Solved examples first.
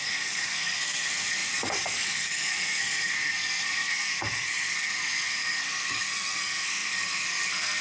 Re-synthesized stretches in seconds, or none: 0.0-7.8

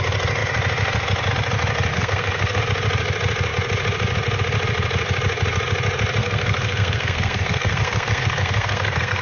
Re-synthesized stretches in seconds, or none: 1.9-2.6; 6.2-9.2

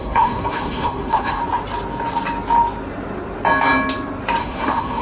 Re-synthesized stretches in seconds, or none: 0.0-1.4; 4.4-5.0

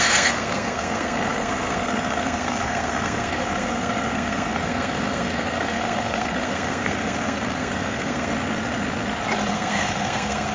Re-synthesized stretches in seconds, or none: 0.0-8.3; 9.5-10.5

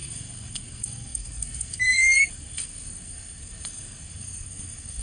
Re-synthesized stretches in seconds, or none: 0.0-5.0